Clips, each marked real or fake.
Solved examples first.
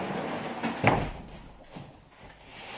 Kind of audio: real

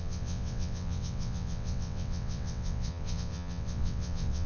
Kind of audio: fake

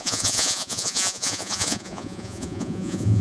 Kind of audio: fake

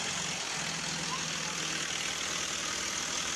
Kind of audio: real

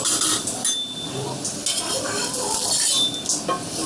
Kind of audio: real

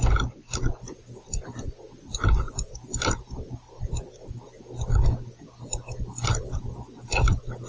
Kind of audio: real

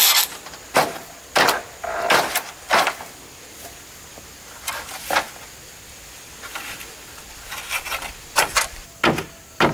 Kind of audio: real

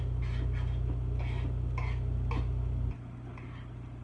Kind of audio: real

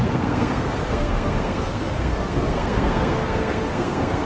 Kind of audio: fake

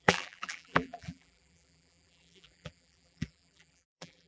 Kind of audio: fake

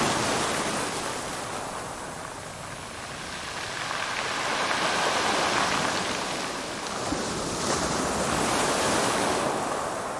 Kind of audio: real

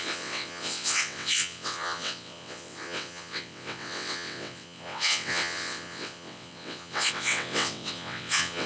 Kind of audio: fake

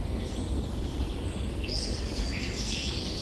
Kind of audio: fake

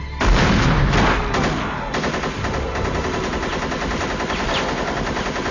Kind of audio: real